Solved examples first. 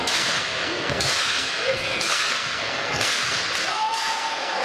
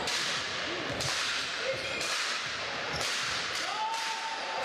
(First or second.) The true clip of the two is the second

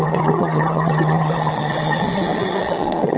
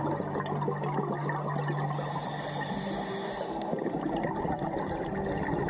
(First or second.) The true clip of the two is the second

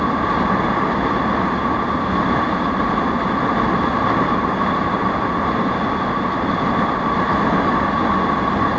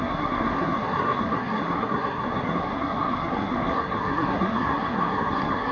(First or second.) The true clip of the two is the first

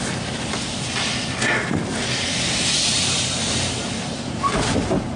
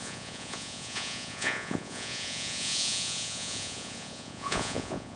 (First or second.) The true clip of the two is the first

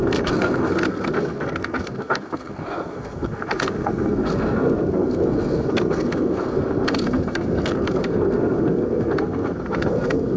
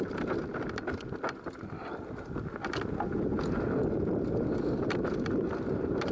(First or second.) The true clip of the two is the second